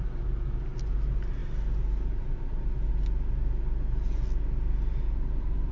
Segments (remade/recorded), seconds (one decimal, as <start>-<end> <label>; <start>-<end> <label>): 0.0-5.7 recorded